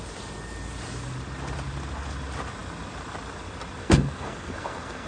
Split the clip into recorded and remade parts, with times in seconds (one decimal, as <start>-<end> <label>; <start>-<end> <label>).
0.0-3.8 recorded; 3.8-5.1 remade